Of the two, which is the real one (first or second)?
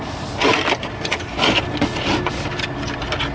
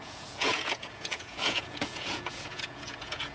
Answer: first